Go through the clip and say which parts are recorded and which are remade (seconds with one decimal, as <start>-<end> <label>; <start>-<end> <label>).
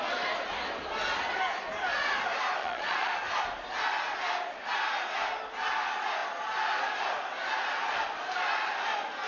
0.0-2.6 recorded; 2.6-3.2 remade; 3.2-9.3 recorded